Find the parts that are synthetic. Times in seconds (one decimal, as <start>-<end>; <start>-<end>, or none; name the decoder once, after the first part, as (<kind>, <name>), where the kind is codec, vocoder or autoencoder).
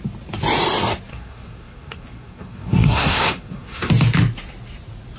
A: 1.1-3.9 (codec, SNAC)